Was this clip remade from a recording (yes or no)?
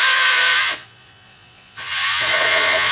yes